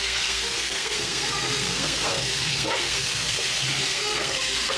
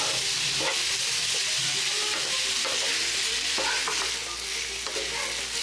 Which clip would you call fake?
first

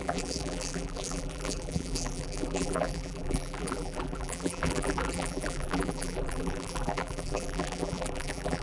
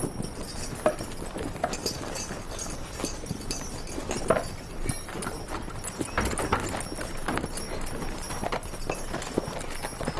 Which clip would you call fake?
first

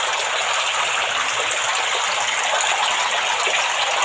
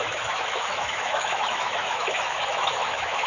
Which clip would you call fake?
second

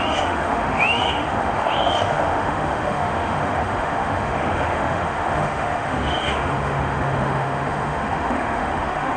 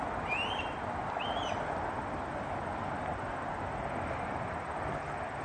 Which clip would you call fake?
first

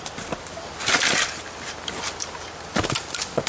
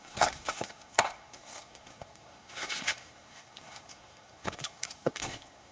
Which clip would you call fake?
second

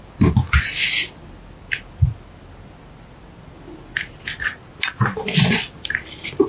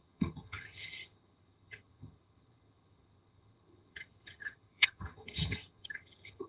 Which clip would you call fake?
second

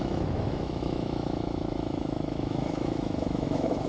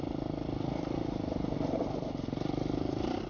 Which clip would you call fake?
first